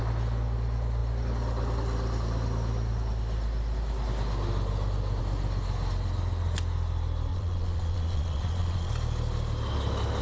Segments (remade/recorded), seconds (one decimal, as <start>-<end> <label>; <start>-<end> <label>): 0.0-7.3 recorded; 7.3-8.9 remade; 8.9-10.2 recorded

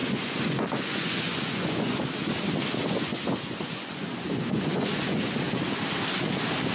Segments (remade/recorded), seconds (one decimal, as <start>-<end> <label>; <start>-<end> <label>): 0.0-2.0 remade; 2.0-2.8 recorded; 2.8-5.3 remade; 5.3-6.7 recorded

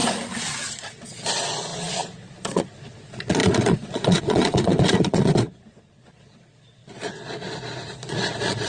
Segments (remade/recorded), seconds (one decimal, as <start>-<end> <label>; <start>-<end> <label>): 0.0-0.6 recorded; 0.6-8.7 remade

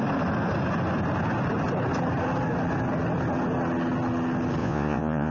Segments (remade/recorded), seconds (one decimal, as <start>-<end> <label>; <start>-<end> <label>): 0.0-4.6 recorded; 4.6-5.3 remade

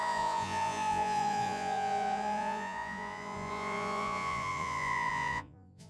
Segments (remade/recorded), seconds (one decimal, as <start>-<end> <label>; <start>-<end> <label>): 0.0-5.9 remade

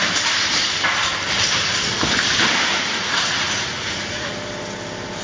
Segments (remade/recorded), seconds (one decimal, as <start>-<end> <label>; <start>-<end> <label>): 0.0-3.0 recorded; 3.0-4.3 remade; 4.3-5.2 recorded

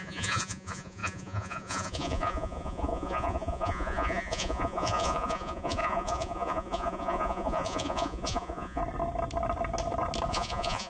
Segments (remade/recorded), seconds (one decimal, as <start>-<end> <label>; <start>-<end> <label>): 0.0-8.8 remade; 8.8-10.3 recorded; 10.3-10.9 remade